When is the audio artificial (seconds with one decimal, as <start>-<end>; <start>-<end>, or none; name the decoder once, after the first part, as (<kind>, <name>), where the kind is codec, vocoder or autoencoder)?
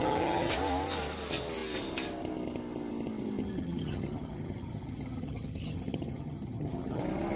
0.0-0.5 (vocoder, HiFi-GAN); 3.4-7.0